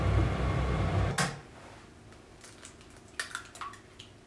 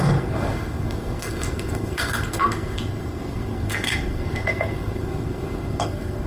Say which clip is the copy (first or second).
second